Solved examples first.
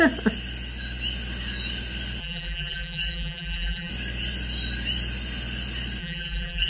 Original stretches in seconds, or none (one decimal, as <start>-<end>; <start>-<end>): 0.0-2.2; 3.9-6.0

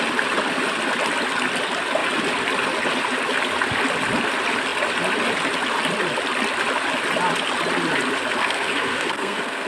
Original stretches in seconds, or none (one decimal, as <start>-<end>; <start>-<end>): 0.0-8.4

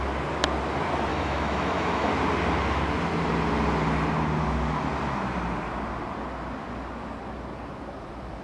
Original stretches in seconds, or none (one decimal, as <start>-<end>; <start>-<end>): 0.0-1.1; 2.1-8.4